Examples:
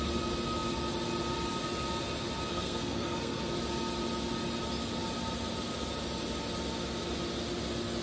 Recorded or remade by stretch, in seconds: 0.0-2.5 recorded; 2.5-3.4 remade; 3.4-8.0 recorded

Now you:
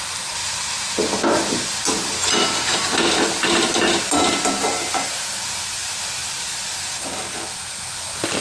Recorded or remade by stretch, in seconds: 0.0-8.4 recorded